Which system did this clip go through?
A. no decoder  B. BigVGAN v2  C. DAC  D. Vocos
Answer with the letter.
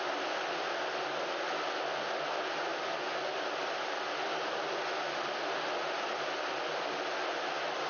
A